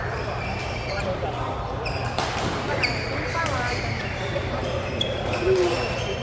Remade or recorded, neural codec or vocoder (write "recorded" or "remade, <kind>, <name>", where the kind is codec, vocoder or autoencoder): remade, vocoder, BigVGAN v2